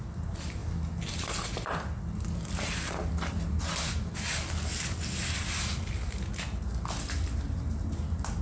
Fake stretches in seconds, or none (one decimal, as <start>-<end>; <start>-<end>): none